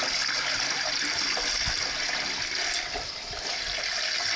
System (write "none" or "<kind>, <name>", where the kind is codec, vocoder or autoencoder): none